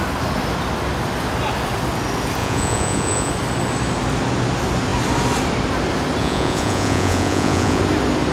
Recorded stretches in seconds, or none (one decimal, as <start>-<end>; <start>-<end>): 0.0-2.4; 3.3-6.2; 7.8-8.3